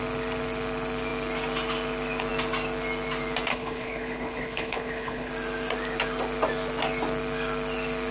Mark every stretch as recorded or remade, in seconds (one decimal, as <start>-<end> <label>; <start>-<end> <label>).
0.0-3.5 recorded; 3.5-5.3 remade; 5.3-8.1 recorded